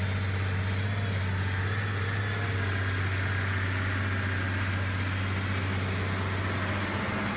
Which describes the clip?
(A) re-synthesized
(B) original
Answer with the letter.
B